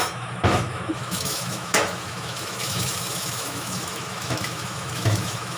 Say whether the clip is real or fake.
fake